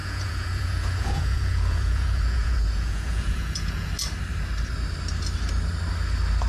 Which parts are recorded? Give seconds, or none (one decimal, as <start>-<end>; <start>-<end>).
3.9-6.5